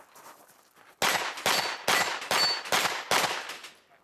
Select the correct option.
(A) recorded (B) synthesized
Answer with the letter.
A